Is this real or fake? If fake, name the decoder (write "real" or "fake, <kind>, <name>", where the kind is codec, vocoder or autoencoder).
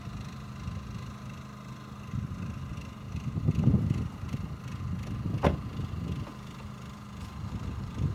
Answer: real